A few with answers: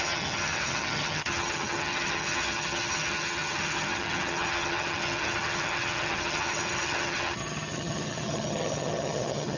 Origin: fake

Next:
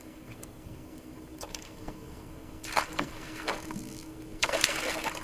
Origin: fake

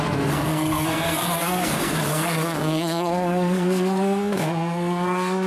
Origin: fake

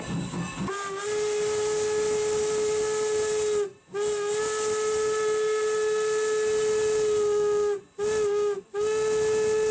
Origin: real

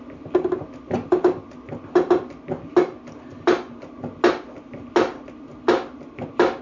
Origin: real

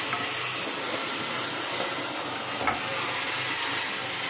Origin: real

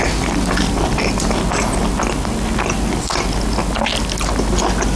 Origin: real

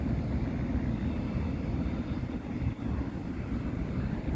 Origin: real